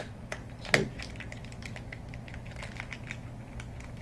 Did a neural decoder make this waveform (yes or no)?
no